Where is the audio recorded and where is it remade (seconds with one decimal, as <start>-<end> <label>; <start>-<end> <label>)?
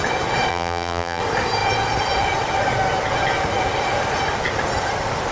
0.0-0.5 recorded; 0.5-1.2 remade; 1.2-5.3 recorded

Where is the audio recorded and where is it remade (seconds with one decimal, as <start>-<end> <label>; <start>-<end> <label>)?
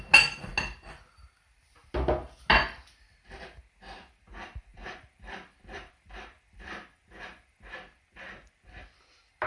0.0-4.7 recorded; 4.7-9.0 remade; 9.0-9.5 recorded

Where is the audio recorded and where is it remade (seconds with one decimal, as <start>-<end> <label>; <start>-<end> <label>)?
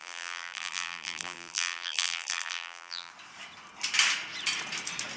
0.0-3.1 remade; 3.1-5.2 recorded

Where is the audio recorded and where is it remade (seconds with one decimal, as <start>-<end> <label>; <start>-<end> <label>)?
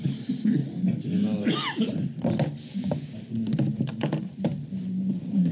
0.0-0.6 remade; 0.6-3.5 recorded; 3.5-4.5 remade; 4.5-5.1 recorded; 5.1-5.5 remade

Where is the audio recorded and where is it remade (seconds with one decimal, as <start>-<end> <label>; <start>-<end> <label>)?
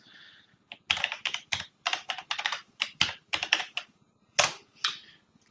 0.0-1.2 recorded; 1.2-4.5 remade; 4.5-5.5 recorded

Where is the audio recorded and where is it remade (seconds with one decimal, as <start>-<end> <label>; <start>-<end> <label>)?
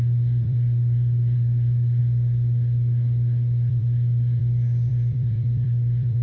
0.0-2.0 remade; 2.0-3.7 recorded; 3.7-4.4 remade; 4.4-4.9 recorded; 4.9-6.2 remade